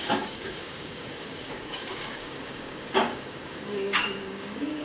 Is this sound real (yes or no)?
no